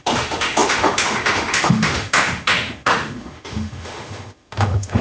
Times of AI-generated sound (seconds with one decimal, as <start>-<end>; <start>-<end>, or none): 0.0-5.0